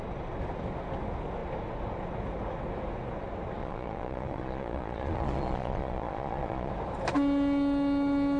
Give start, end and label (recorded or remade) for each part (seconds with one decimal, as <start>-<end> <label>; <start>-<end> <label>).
0.0-3.6 recorded; 3.6-6.7 remade; 6.7-8.4 recorded